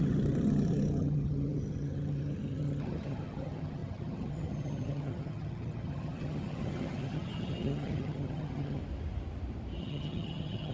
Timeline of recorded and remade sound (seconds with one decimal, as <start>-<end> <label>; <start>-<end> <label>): 0.0-8.8 remade; 8.8-9.8 recorded; 9.8-10.7 remade